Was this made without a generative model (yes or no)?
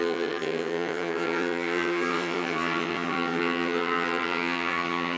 no